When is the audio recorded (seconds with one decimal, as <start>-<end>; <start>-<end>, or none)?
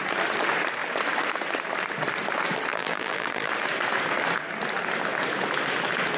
0.0-2.7; 3.5-6.2